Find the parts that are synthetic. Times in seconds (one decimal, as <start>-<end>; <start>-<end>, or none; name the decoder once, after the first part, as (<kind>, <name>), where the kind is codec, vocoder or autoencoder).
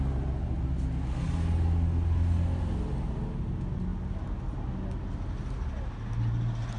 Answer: none